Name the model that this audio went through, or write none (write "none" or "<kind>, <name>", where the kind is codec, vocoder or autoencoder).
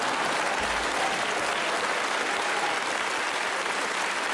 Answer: none